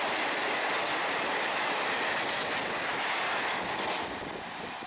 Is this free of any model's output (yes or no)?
yes